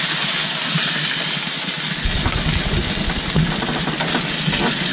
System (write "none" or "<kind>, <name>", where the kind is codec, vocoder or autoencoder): none